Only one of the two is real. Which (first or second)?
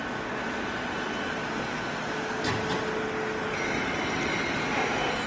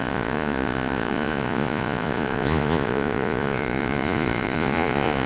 first